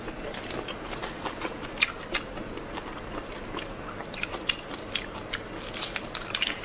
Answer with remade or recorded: recorded